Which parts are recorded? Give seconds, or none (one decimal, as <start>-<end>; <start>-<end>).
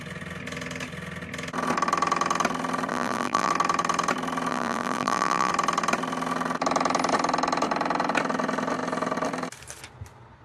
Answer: 0.0-2.9; 3.5-4.5; 5.5-10.4